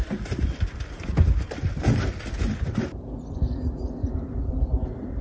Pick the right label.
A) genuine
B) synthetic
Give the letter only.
A